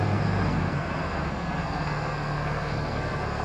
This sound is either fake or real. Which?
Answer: fake